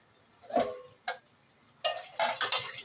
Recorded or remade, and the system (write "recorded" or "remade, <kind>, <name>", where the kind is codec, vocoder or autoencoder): recorded